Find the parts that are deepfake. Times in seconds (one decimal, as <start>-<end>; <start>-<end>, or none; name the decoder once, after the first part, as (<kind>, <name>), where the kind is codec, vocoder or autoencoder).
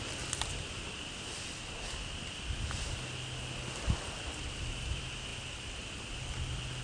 none